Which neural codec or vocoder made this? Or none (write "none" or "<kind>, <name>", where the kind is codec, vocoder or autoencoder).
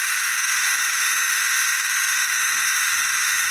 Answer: autoencoder, DAC-VAE